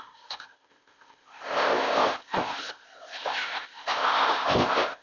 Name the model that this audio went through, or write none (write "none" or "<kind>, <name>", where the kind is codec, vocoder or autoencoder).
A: codec, ZipCodec